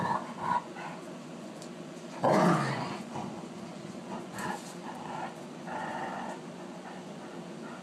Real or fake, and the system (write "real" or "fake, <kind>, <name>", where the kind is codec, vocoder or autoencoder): fake, vocoder, Vocos